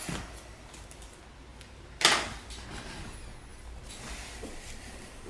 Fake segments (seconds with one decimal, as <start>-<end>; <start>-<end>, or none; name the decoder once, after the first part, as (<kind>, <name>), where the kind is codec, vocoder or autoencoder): 1.5-3.0 (vocoder, BigVGAN v2)